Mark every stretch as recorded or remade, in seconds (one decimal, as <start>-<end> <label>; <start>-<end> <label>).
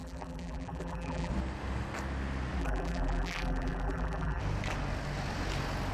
0.0-1.3 remade; 1.3-2.6 recorded; 2.6-4.4 remade; 4.4-5.9 recorded